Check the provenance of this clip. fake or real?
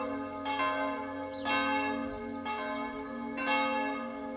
real